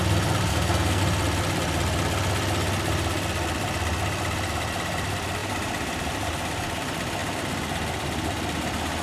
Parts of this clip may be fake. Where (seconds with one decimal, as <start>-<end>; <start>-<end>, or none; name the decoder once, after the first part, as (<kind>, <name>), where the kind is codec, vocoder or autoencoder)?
0.5-1.0 (codec, SNAC)